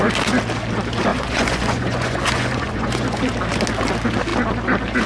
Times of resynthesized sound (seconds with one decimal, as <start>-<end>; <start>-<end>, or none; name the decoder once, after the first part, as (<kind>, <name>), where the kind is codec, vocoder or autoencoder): 1.1-3.2 (vocoder, Vocos)